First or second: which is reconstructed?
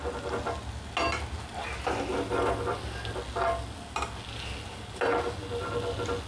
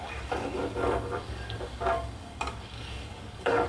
second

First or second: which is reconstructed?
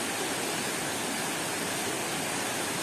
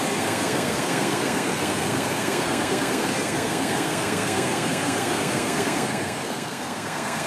second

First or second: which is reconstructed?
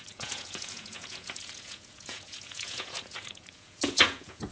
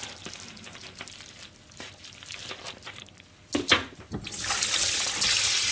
first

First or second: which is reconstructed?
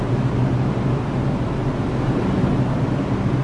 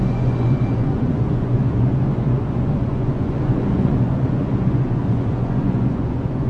second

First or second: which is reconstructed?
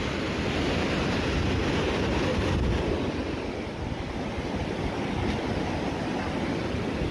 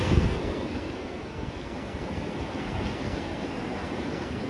second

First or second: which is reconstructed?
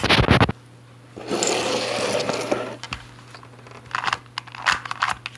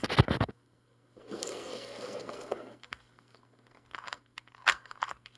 second